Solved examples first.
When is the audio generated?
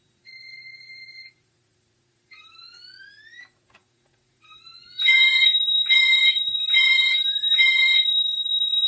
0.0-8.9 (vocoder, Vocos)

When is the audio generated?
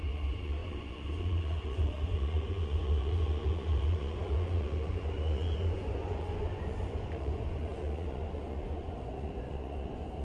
0.0-10.2 (vocoder, Vocos)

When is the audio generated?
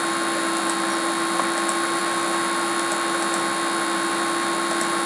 none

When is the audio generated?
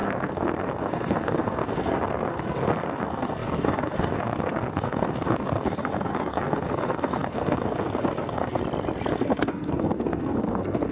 0.0-8.6 (codec, SNAC); 9.1-10.9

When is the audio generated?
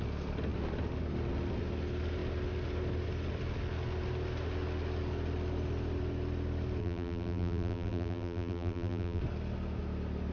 6.8-9.2 (vocoder, BigVGAN v2)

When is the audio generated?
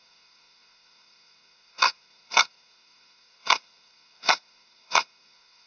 0.0-5.7 (codec, SNAC)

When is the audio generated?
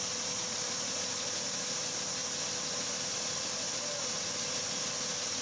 none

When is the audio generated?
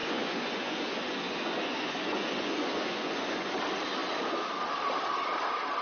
0.0-3.5 (vocoder, Vocos)